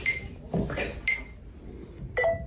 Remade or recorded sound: recorded